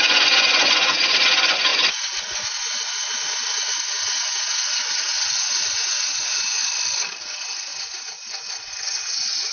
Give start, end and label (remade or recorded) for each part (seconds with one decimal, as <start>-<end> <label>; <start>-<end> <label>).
0.0-6.6 remade; 6.6-7.2 recorded; 7.2-9.5 remade